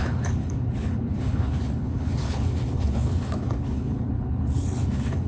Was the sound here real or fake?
fake